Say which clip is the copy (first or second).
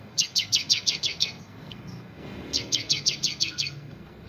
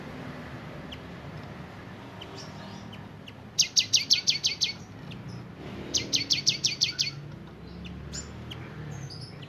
first